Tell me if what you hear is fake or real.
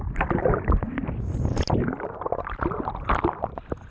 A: real